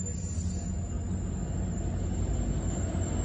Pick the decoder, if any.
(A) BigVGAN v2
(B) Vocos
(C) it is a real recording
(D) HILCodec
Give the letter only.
C